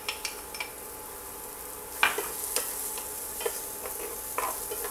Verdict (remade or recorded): recorded